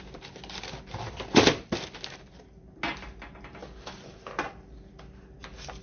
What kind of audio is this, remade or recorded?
recorded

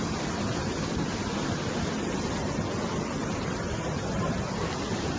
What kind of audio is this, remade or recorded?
recorded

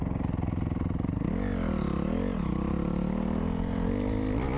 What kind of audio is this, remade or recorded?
recorded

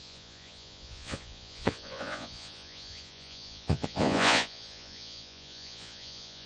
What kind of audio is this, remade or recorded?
remade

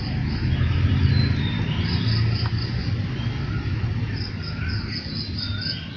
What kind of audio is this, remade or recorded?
recorded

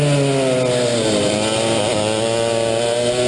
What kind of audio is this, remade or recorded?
recorded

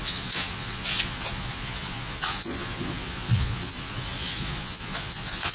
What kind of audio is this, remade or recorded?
remade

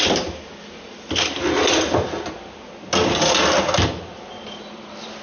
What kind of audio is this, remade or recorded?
recorded